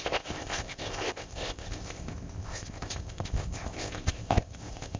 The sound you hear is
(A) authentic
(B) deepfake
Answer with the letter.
B